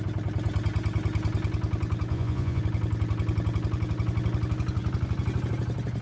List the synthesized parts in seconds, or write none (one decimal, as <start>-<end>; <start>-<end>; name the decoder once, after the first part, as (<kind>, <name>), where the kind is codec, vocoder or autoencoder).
2.1-2.6 (vocoder, Vocos)